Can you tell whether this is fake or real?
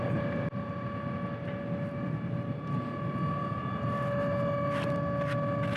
real